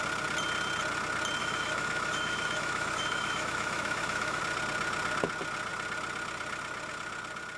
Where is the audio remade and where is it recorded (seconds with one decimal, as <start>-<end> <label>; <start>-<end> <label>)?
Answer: 0.0-1.4 recorded; 1.4-4.4 remade; 4.4-7.6 recorded

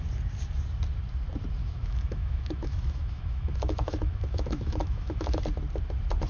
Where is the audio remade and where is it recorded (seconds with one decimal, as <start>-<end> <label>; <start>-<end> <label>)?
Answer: 0.0-1.6 recorded; 1.6-5.4 remade; 5.4-6.3 recorded